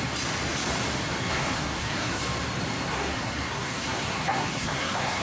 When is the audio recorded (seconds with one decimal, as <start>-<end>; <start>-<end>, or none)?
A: 0.0-1.2; 2.2-2.9